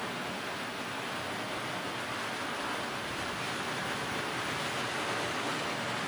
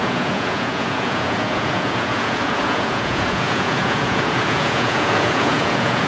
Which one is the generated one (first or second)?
second